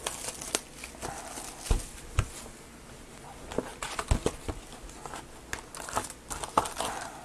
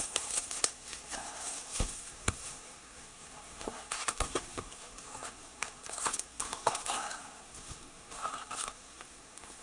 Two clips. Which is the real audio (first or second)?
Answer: first